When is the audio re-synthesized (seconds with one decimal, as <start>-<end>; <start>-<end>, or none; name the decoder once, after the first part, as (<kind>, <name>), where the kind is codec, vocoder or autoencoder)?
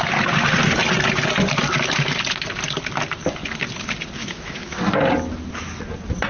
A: 4.2-4.8 (autoencoder, DAC-VAE)